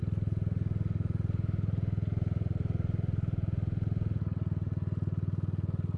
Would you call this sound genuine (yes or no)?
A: yes